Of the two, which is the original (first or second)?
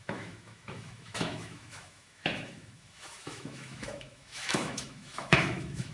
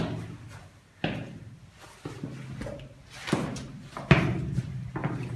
second